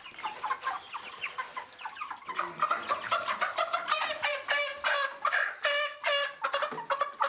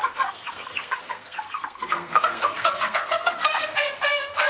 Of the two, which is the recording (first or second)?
first